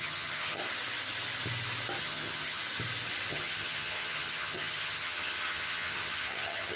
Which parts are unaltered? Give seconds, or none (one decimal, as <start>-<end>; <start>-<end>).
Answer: 0.6-2.0; 2.6-3.3